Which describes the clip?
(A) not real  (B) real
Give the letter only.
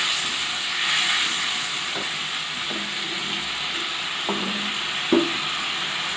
B